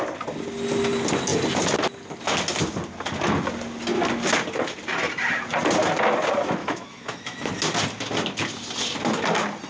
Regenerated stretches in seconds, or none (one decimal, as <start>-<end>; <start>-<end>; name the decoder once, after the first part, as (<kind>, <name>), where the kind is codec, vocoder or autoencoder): 6.6-7.5 (autoencoder, DAC-VAE)